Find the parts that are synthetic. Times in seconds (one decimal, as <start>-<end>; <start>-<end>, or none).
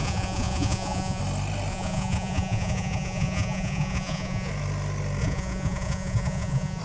0.0-1.2; 1.7-4.5; 5.2-6.8